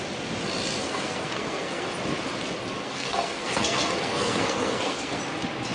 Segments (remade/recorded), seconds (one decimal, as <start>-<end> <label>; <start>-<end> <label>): 0.0-0.8 recorded; 0.8-1.9 remade; 1.9-2.8 recorded; 2.8-5.2 remade; 5.2-5.7 recorded